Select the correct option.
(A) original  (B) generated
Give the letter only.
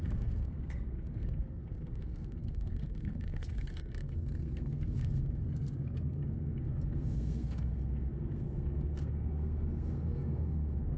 B